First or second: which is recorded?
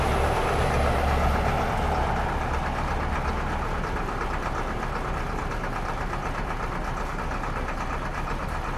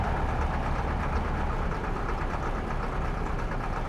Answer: first